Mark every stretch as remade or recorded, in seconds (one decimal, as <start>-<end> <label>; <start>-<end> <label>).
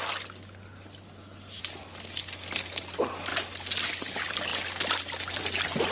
0.0-5.9 recorded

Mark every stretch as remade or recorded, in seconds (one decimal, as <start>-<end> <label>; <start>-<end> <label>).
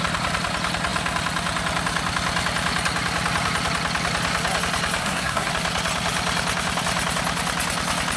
0.0-5.0 recorded; 5.0-5.5 remade; 5.5-8.2 recorded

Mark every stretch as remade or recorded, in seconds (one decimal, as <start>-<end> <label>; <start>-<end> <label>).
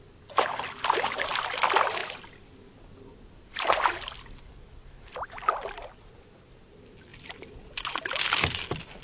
0.0-9.0 recorded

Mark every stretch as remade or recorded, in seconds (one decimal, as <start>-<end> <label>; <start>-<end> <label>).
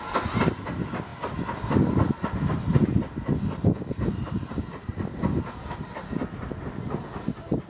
0.0-7.7 recorded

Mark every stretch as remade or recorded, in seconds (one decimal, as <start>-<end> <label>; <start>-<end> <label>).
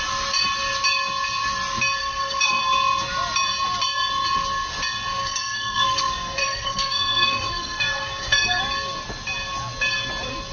0.0-2.0 recorded; 2.0-2.6 remade; 2.6-5.2 recorded; 5.2-8.6 remade; 8.6-10.5 recorded